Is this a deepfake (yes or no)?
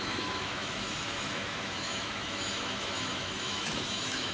yes